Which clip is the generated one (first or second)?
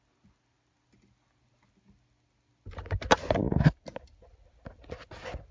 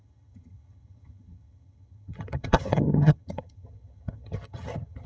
second